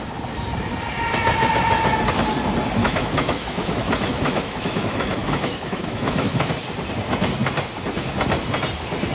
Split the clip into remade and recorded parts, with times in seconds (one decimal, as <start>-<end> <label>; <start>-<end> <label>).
0.0-2.8 recorded; 2.8-6.5 remade; 6.5-9.1 recorded